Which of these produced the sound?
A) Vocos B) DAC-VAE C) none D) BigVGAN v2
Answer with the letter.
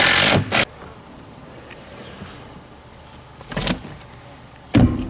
C